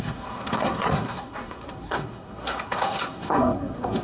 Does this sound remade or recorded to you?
remade